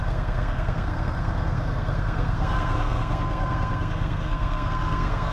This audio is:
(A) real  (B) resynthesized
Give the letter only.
B